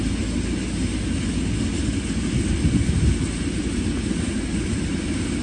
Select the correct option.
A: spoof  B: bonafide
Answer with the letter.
B